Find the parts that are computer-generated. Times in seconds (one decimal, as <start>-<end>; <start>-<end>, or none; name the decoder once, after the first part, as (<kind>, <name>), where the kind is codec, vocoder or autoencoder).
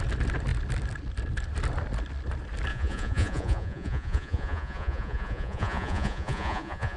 2.7-7.0 (vocoder, Vocos)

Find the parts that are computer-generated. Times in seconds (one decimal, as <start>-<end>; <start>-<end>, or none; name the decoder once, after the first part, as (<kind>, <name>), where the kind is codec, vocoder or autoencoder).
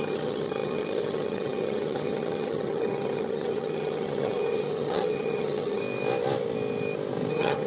0.0-5.8 (vocoder, HiFi-GAN); 7.3-7.7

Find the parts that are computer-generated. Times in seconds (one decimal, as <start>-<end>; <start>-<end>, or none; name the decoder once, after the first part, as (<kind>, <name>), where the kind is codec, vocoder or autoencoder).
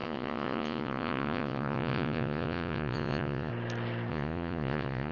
0.0-3.5 (vocoder, Vocos); 4.1-5.1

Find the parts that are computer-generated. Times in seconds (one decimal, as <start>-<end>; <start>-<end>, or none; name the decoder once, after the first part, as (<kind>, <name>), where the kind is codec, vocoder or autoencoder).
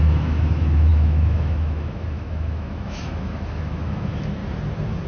0.0-4.4 (autoencoder, DAC-VAE)